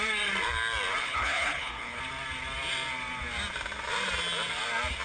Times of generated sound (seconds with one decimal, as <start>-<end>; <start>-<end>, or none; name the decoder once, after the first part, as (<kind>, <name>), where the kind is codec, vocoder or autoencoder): 1.0-2.0 (codec, HILCodec)